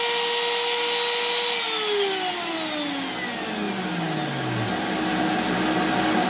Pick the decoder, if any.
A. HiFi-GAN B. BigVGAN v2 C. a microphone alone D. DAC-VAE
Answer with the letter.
C